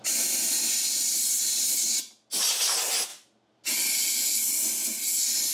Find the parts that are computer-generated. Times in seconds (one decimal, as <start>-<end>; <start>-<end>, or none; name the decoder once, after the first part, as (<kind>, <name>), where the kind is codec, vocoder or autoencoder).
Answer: none